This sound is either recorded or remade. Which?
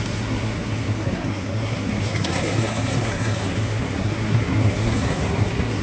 remade